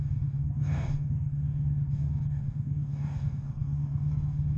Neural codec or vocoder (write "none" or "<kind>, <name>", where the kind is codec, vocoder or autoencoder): codec, DAC